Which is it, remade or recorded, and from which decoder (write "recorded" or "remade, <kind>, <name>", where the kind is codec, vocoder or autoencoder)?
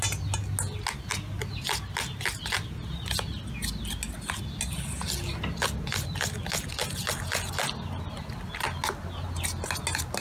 recorded